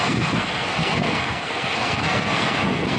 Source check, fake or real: fake